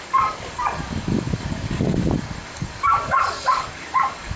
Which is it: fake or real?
fake